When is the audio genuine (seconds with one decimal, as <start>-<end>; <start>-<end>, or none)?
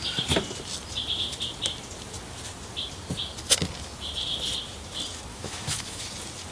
0.0-5.3; 6.0-6.5